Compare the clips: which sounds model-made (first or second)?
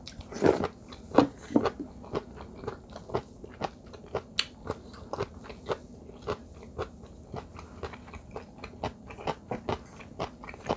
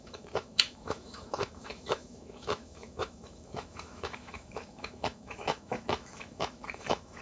second